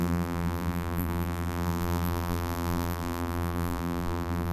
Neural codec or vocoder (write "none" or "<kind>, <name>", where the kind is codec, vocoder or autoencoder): vocoder, BigVGAN v2